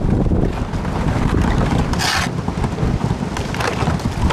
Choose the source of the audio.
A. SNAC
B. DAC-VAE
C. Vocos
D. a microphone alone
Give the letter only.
D